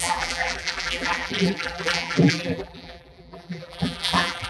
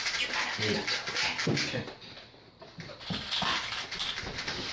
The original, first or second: second